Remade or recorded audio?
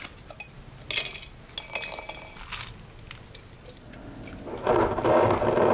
recorded